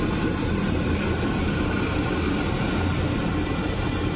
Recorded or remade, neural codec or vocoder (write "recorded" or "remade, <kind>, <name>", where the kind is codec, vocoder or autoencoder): recorded